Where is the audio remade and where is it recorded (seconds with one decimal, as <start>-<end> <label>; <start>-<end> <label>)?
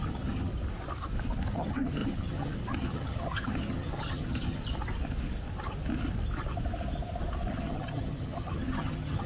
0.0-0.5 remade; 0.5-1.5 recorded; 1.5-4.6 remade; 4.6-7.5 recorded; 7.5-9.3 remade